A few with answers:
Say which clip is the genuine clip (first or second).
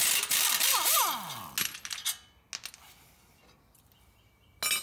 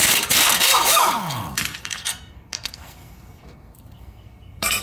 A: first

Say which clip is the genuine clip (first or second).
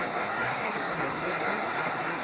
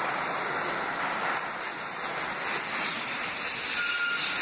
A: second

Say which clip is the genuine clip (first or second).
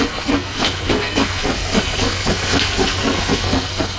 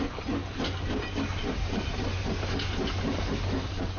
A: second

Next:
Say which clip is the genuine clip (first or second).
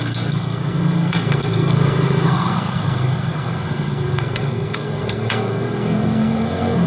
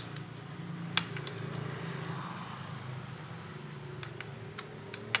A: second